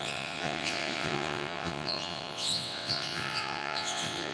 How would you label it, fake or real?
fake